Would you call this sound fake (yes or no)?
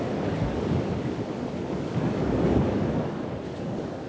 yes